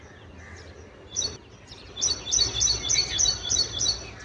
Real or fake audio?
real